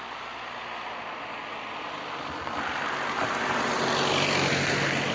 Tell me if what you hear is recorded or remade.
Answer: recorded